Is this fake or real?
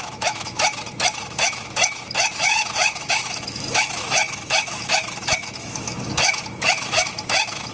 fake